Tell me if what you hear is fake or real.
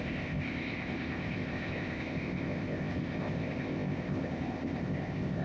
fake